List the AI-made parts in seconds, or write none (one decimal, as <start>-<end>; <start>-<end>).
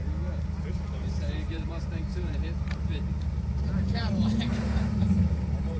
0.7-5.8